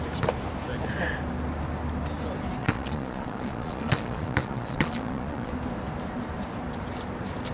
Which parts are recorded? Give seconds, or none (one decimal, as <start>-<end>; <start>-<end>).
0.0-2.6; 5.5-7.5